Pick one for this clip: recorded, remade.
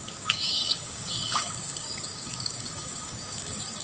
remade